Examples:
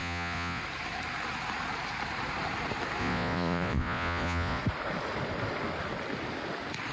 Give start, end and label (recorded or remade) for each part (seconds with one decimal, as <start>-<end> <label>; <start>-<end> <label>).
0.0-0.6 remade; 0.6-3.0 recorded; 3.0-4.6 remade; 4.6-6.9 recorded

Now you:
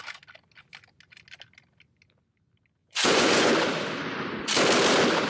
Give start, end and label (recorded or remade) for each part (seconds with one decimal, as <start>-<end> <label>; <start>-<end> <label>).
0.0-2.8 recorded; 2.8-3.5 remade; 3.5-5.3 recorded

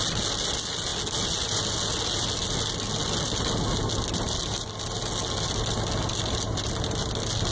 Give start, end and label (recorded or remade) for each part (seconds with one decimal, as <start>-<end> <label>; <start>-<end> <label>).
0.0-7.5 recorded

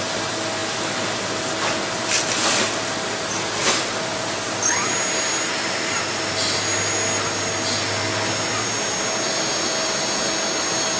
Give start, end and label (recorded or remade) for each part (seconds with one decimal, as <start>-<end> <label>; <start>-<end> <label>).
0.0-11.0 recorded

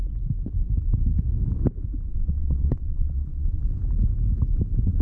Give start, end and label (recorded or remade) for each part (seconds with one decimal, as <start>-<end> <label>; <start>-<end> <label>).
0.0-2.1 recorded; 2.1-3.6 remade; 3.6-5.0 recorded

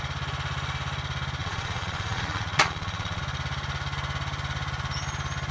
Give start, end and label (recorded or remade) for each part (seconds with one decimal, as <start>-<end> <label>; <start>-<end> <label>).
0.0-1.4 recorded; 1.4-3.2 remade; 3.2-5.5 recorded